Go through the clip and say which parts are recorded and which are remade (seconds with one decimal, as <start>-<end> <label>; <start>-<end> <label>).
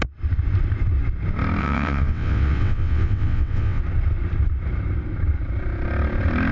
0.0-1.6 recorded; 1.6-3.8 remade; 3.8-6.5 recorded